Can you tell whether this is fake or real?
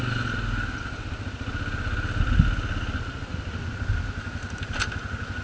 real